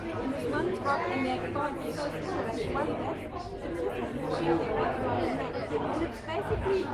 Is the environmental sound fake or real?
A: real